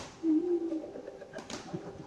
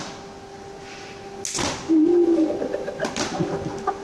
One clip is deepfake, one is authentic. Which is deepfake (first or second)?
first